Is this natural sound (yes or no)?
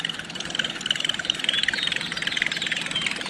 yes